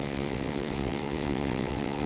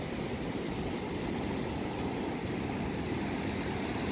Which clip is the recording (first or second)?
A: second